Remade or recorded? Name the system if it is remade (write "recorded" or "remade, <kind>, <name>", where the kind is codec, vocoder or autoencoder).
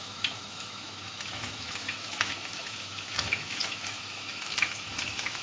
remade, autoencoder, DAC-VAE